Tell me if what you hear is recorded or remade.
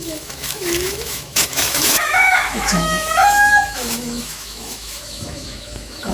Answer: remade